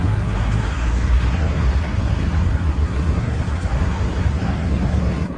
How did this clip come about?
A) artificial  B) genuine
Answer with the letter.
A